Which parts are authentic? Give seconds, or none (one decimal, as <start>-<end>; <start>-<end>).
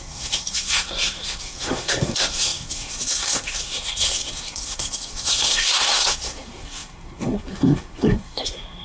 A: none